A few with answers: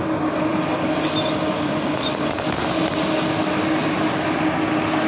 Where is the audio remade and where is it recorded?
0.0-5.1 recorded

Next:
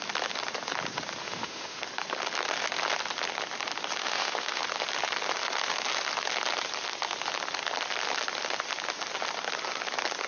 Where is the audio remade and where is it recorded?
0.0-1.2 recorded; 1.2-1.8 remade; 1.8-4.0 recorded; 4.0-4.6 remade; 4.6-10.3 recorded